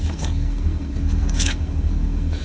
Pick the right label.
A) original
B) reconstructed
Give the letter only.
B